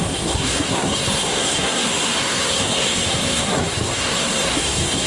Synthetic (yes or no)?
yes